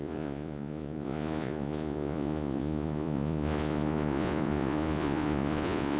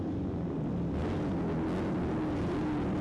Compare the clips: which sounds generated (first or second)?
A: first